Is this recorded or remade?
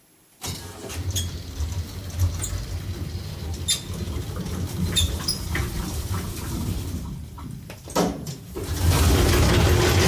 recorded